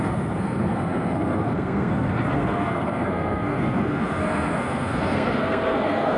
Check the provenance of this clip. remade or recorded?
remade